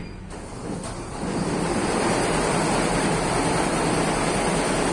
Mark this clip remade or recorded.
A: recorded